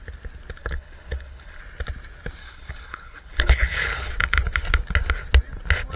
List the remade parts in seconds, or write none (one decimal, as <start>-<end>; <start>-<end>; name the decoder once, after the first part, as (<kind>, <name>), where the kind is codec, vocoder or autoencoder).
0.6-1.6 (codec, HILCodec); 2.4-4.1